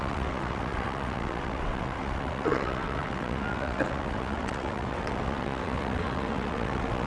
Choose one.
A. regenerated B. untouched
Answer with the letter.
A